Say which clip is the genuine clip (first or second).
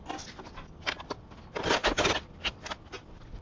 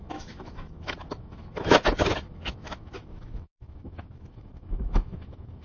first